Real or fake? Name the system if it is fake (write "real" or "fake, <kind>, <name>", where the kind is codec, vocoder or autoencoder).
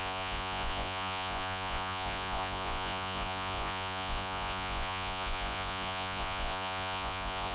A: fake, vocoder, Vocos